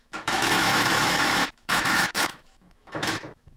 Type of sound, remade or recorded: remade